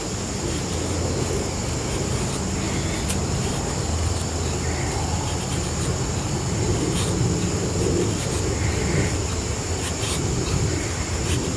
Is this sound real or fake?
real